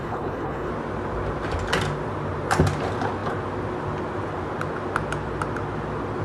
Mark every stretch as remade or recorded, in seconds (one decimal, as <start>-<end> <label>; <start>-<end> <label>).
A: 0.0-0.7 remade; 0.7-6.2 recorded